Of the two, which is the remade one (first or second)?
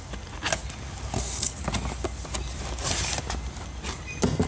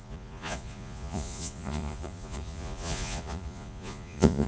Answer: second